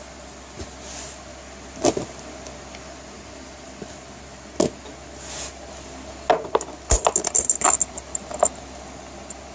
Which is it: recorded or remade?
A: recorded